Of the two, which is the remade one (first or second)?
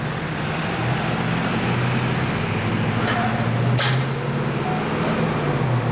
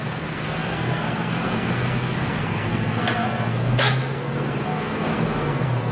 second